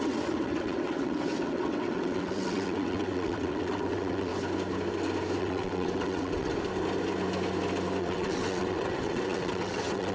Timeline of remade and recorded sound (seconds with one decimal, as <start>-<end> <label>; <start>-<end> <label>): 0.0-4.3 remade; 4.3-5.4 recorded; 5.4-6.5 remade; 6.5-8.0 recorded; 8.0-10.1 remade